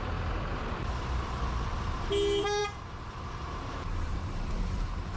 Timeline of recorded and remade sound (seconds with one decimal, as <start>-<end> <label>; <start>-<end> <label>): 0.0-0.5 recorded; 0.5-1.4 remade; 1.4-2.6 recorded; 2.6-5.2 remade